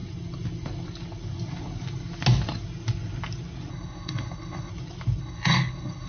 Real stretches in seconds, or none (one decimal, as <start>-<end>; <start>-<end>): 0.0-3.7; 4.7-5.2